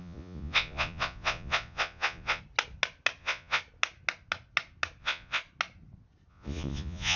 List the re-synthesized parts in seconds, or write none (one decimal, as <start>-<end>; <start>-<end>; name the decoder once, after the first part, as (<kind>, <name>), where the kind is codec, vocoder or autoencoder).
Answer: 0.0-2.4 (vocoder, Vocos); 3.2-3.6; 5.0-5.4; 6.3-7.2